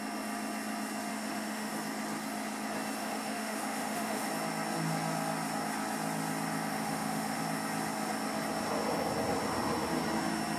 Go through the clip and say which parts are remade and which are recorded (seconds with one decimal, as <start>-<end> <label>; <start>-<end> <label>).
0.0-1.1 recorded; 1.1-1.7 remade; 1.7-3.0 recorded; 3.0-4.3 remade; 4.3-6.7 recorded; 6.7-7.4 remade; 7.4-10.6 recorded